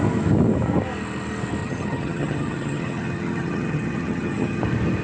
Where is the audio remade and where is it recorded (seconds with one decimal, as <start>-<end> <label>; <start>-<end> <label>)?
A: 0.0-1.6 recorded; 1.6-4.6 remade; 4.6-5.0 recorded